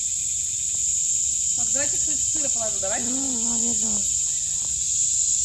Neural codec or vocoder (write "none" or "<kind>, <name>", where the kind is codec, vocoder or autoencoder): none